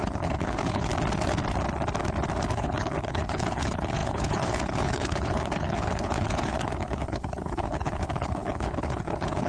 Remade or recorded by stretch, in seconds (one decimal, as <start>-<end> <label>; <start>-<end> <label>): 0.0-0.9 remade; 0.9-2.5 recorded; 2.5-9.5 remade